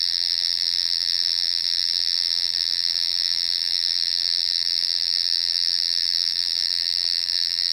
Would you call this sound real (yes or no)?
no